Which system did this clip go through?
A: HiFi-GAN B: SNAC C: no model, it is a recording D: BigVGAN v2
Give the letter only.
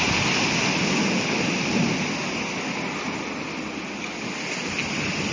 C